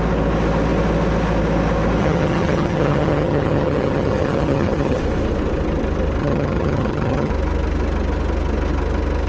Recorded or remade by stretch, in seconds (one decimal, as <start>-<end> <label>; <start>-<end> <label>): 0.0-2.0 recorded; 2.0-5.0 remade; 5.0-6.2 recorded; 6.2-7.3 remade; 7.3-9.3 recorded